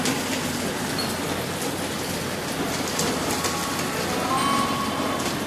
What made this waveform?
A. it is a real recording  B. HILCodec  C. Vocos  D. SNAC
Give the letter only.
A